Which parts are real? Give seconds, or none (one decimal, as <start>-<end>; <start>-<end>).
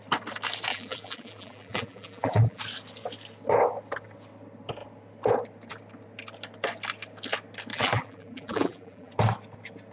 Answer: 0.0-0.7; 2.6-7.7; 9.1-9.9